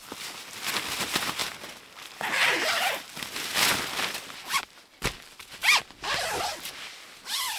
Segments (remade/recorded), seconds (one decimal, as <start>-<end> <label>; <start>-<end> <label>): 0.0-7.6 recorded